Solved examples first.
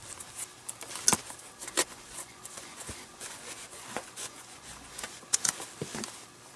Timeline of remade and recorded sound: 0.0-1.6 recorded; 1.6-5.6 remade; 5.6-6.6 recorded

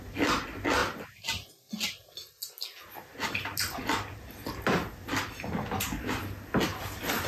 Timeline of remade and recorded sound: 0.0-7.3 recorded

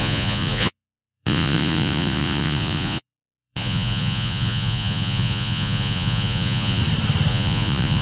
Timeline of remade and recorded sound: 0.0-6.8 remade; 6.8-7.3 recorded; 7.3-8.0 remade